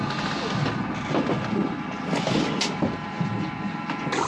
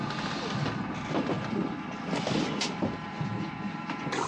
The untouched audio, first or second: first